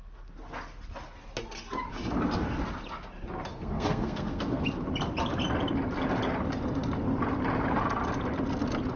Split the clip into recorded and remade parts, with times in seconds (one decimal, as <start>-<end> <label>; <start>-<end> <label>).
0.0-3.5 recorded; 3.5-4.6 remade; 4.6-9.0 recorded